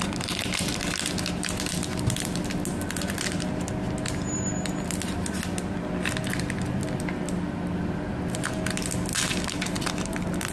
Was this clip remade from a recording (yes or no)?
no